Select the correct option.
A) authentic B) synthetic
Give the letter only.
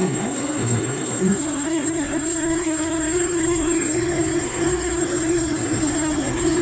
B